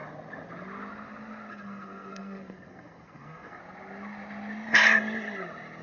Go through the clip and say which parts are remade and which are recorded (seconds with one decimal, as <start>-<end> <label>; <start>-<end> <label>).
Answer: 0.0-1.5 recorded; 1.5-3.6 remade; 3.6-5.8 recorded